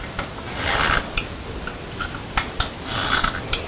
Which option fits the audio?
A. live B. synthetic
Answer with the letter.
A